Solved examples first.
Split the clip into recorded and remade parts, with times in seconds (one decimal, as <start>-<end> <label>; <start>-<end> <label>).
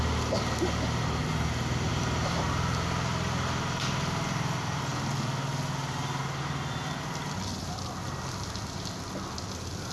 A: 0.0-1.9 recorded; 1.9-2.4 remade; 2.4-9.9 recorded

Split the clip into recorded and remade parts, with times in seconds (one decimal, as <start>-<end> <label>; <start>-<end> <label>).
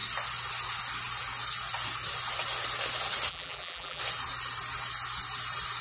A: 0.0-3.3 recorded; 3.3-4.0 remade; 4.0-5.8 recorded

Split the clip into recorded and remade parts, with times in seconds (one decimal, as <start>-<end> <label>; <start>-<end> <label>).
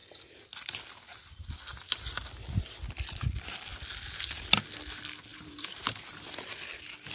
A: 0.0-5.3 recorded; 5.3-6.0 remade; 6.0-7.1 recorded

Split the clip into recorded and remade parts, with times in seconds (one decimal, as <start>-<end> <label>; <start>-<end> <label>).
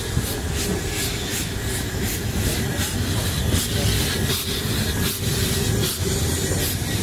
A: 0.0-7.0 recorded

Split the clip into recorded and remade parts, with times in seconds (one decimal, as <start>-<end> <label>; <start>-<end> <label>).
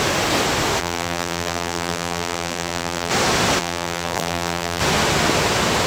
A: 0.0-0.8 recorded; 0.8-3.1 remade; 3.1-3.6 recorded; 3.6-4.8 remade; 4.8-5.9 recorded